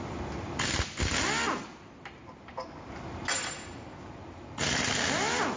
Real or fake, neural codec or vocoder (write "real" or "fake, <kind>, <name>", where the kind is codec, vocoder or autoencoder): real